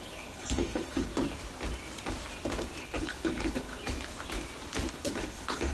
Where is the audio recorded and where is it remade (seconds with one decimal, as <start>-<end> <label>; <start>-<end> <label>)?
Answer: 0.0-1.1 remade; 1.1-2.8 recorded; 2.8-3.7 remade; 3.7-4.9 recorded; 4.9-5.7 remade